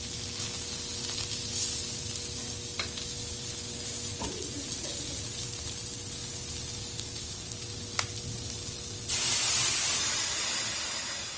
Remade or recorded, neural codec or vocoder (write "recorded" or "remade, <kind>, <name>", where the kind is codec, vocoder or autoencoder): recorded